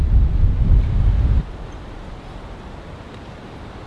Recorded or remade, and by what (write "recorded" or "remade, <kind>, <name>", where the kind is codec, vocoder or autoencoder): recorded